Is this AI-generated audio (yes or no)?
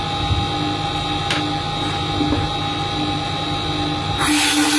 no